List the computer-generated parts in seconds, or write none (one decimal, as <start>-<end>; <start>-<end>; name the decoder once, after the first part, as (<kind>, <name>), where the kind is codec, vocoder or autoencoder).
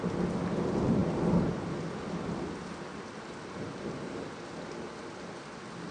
none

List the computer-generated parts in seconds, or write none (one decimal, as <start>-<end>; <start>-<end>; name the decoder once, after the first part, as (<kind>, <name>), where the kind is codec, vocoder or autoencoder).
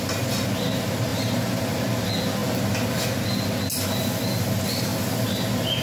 1.1-1.8 (vocoder, BigVGAN v2)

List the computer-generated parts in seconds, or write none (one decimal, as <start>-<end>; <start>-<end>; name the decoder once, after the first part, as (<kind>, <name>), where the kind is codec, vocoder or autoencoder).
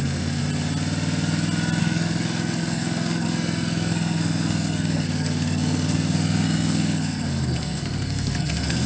0.0-0.4 (codec, SNAC); 1.8-8.9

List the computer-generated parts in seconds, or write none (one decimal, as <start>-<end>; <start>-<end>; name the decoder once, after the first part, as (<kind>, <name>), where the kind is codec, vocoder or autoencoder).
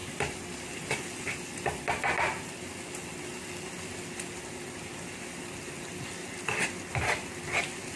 none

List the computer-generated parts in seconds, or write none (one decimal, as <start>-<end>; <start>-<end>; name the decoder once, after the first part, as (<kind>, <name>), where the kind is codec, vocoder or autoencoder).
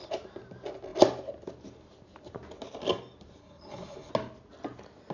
3.4-4.1 (codec, HILCodec)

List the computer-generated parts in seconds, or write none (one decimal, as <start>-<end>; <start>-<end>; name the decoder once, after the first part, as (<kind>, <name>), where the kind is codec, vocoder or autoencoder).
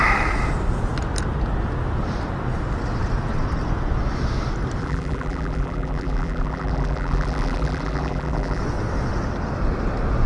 4.8-8.6 (vocoder, BigVGAN v2)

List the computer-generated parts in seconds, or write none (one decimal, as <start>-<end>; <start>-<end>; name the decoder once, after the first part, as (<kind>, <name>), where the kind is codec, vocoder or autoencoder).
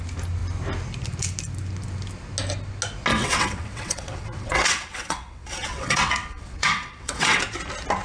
3.1-7.4 (vocoder, WaveNeXt)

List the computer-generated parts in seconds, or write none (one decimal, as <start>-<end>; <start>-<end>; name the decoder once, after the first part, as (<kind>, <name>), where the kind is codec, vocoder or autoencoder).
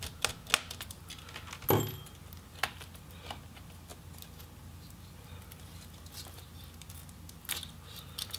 none